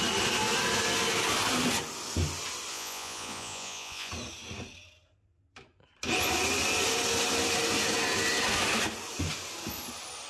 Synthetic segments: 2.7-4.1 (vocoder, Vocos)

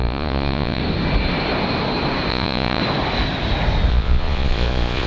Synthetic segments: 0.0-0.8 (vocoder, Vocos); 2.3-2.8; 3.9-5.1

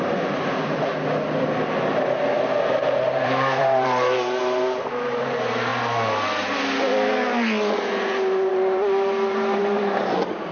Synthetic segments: 0.0-0.9 (vocoder, BigVGAN v2); 2.6-5.7; 8.5-10.5

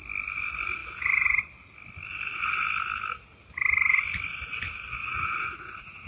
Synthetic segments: 5.0-6.1 (vocoder, Vocos)